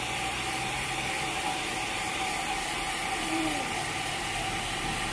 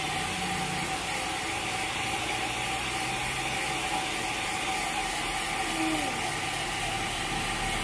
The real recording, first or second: second